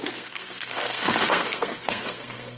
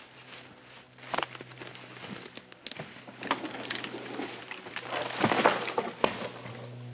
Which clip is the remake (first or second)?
first